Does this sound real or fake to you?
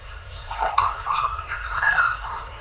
fake